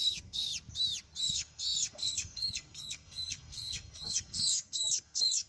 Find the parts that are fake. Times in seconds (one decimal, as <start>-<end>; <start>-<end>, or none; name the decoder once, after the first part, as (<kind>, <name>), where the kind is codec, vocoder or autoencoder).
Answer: 0.0-0.5 (codec, SNAC); 1.2-5.5